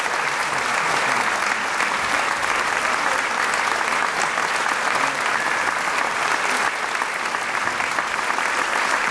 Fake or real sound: real